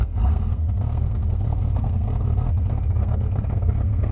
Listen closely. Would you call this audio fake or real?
fake